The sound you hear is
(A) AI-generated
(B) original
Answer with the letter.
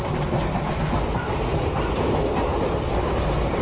B